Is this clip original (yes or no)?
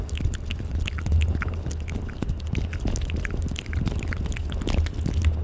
yes